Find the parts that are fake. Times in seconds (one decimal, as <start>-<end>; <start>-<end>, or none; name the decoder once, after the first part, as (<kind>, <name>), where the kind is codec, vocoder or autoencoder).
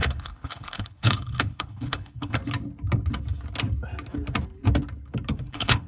0.0-2.4 (codec, HILCodec); 5.4-5.9